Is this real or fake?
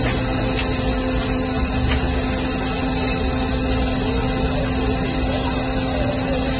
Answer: real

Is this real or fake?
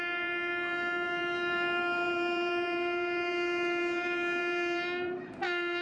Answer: fake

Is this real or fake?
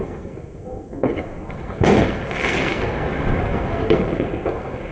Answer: fake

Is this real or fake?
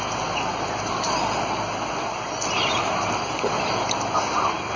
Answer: real